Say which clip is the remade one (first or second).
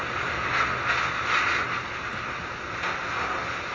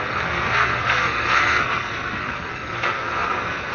second